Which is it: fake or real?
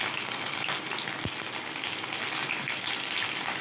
real